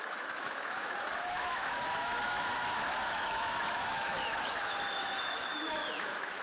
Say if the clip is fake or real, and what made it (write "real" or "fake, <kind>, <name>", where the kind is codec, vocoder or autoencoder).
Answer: fake, autoencoder, DAC-VAE